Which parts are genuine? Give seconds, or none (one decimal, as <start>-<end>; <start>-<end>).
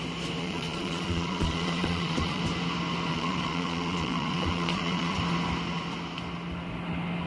0.0-0.4; 2.4-3.1; 5.2-7.3